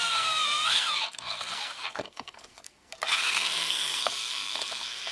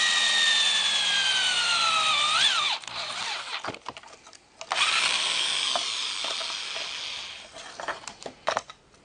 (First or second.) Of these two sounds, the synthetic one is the first